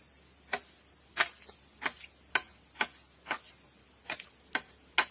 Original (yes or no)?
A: yes